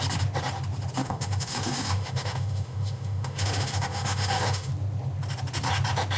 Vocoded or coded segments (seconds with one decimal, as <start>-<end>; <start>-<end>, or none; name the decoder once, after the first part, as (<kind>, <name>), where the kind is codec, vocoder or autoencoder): 1.0-4.7 (autoencoder, DAC-VAE)

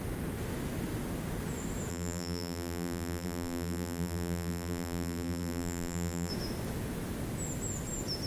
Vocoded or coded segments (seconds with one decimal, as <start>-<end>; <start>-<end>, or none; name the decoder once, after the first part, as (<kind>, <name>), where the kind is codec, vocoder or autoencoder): 1.9-6.3 (vocoder, BigVGAN v2)